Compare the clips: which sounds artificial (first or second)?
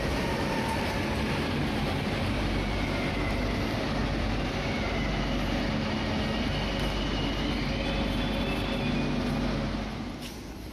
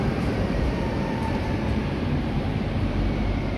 second